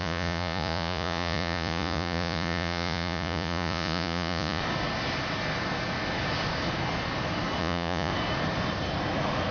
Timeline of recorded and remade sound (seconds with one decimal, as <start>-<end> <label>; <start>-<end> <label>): 0.0-4.6 remade; 4.6-7.6 recorded; 7.6-8.1 remade; 8.1-9.5 recorded